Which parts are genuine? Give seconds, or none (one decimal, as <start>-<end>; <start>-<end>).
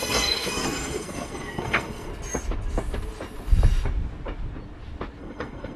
2.1-5.2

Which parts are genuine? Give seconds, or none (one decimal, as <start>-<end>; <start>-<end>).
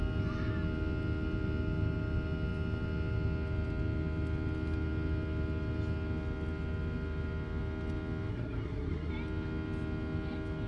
0.0-8.3; 9.1-10.7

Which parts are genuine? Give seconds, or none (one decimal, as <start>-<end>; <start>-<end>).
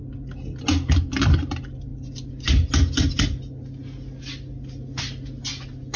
0.0-6.0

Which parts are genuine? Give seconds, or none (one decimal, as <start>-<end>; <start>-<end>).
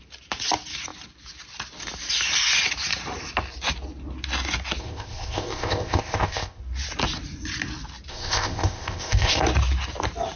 0.0-4.8; 6.6-8.1; 9.4-10.4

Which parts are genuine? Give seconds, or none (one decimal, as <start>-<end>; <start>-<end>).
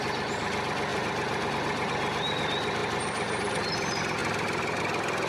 0.0-0.9; 1.5-2.8; 3.5-5.3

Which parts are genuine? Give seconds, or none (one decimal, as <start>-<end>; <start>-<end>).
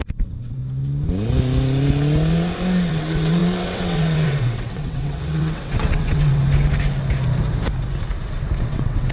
0.6-2.9; 6.4-8.6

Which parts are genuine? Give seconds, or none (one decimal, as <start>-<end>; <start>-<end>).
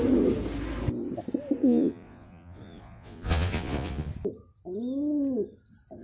0.0-1.6; 4.1-6.0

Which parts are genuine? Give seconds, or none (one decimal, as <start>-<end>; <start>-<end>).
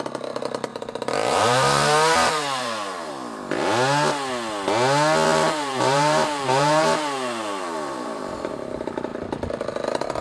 0.0-0.7; 3.1-5.3; 8.5-10.2